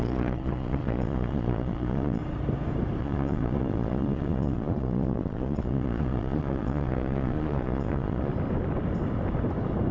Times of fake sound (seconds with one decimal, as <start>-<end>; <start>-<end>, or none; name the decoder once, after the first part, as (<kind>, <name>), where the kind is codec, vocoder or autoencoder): 0.0-2.2 (vocoder, Vocos); 3.0-8.3